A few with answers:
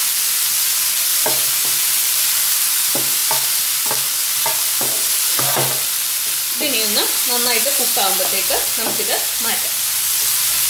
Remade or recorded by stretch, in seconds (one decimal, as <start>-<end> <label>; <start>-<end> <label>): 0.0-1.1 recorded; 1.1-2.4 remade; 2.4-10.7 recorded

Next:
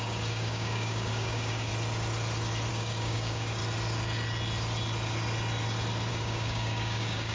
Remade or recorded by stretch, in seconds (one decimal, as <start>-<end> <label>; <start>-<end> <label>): 0.0-1.7 remade; 1.7-2.7 recorded; 2.7-3.6 remade; 3.6-6.1 recorded; 6.1-7.3 remade

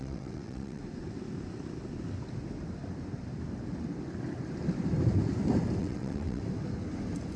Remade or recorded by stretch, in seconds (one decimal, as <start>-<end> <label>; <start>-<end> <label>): 0.0-0.8 remade; 0.8-5.8 recorded; 5.8-6.4 remade; 6.4-7.4 recorded